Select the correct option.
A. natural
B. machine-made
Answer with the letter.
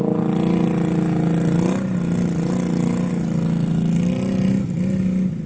A